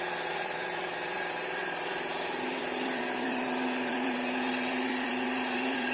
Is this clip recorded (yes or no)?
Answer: no